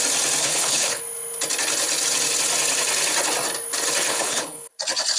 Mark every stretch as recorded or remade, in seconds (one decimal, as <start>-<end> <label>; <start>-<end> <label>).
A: 0.0-0.4 recorded; 0.4-1.0 remade; 1.0-4.1 recorded; 4.1-4.7 remade; 4.7-5.2 recorded